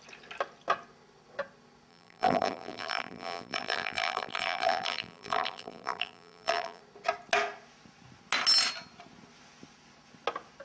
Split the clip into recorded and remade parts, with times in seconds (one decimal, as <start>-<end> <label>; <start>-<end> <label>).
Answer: 0.0-1.9 recorded; 1.9-6.8 remade; 6.8-10.6 recorded

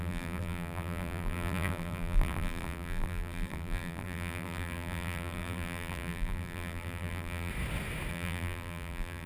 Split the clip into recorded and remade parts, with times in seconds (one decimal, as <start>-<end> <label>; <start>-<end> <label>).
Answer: 0.0-7.5 remade; 7.5-8.1 recorded; 8.1-9.3 remade